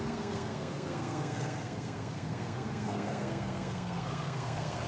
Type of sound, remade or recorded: remade